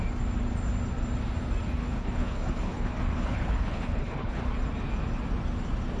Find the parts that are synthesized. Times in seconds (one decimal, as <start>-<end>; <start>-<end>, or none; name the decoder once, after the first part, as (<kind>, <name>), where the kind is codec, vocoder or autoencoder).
1.8-4.4 (codec, HILCodec)